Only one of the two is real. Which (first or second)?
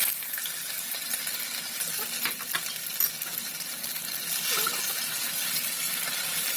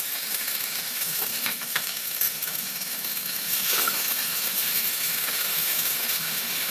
first